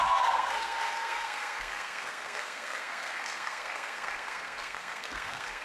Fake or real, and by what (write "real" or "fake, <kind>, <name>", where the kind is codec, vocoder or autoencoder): fake, codec, SNAC